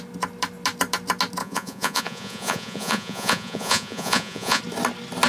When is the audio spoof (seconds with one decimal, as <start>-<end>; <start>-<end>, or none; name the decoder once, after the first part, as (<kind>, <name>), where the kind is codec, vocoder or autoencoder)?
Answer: 1.4-4.6 (vocoder, Vocos)